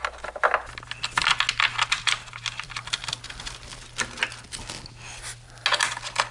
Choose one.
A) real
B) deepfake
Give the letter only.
A